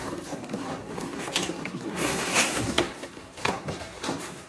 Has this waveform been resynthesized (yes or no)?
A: yes